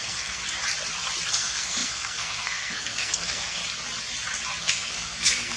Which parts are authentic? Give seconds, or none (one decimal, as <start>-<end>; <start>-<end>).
0.4-1.3; 3.6-4.6